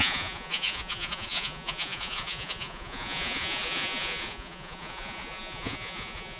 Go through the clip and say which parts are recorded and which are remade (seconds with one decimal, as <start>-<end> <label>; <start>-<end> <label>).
0.0-6.4 remade